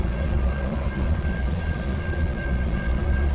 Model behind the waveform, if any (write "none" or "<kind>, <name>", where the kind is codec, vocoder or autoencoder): vocoder, Vocos